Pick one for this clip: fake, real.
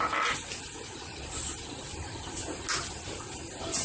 real